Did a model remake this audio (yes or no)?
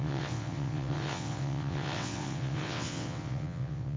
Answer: yes